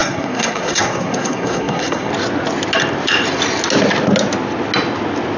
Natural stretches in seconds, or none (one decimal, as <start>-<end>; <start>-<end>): 2.1-5.4